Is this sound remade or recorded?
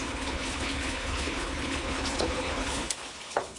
remade